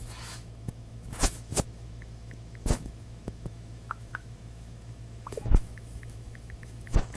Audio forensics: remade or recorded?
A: remade